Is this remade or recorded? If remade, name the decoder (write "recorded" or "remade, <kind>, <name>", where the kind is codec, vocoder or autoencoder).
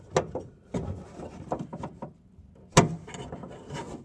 recorded